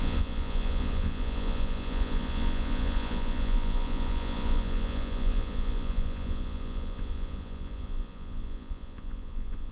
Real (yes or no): no